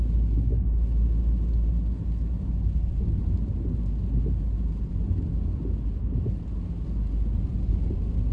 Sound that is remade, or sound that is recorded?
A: recorded